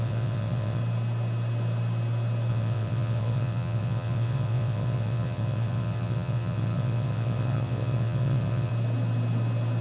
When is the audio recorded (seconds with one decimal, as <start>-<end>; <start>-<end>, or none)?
0.8-2.5; 8.7-9.8